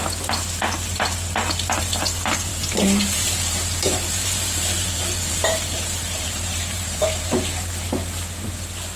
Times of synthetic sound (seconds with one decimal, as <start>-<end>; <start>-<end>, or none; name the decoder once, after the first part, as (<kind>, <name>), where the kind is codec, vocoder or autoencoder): 2.5-7.2 (vocoder, BigVGAN v2)